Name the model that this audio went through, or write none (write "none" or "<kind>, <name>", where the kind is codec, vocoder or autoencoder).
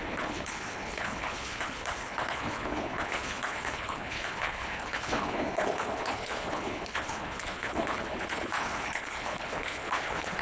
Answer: codec, HILCodec